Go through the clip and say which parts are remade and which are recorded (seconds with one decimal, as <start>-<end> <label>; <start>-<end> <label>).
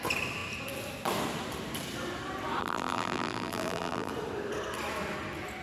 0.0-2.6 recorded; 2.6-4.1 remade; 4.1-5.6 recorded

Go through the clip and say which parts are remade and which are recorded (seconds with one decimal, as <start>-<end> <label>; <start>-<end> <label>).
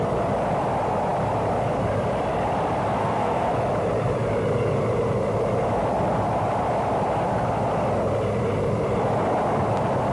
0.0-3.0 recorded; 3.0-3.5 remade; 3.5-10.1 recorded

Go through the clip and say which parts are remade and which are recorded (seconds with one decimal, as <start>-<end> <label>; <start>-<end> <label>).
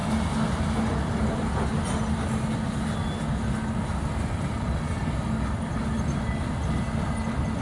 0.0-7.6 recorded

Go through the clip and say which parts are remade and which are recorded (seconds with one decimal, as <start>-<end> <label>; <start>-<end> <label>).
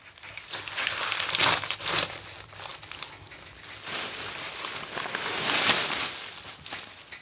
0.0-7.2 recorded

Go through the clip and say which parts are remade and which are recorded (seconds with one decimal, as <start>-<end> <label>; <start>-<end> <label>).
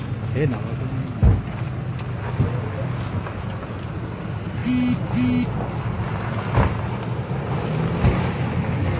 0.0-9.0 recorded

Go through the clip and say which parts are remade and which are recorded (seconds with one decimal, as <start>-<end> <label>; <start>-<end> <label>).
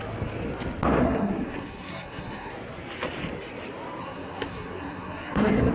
0.0-1.0 recorded; 1.0-2.5 remade; 2.5-4.0 recorded; 4.0-5.7 remade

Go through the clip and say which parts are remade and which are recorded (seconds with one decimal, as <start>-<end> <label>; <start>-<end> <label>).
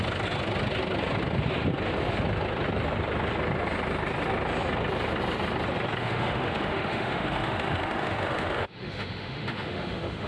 0.0-6.0 recorded; 6.0-10.3 remade